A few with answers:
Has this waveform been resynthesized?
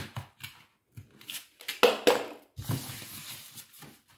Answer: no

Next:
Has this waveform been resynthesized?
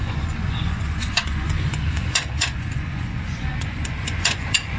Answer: yes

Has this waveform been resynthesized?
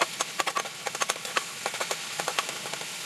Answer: no